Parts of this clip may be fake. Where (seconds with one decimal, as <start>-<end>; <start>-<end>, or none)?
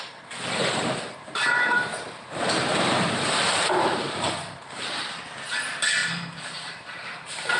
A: 0.6-5.2; 6.0-7.6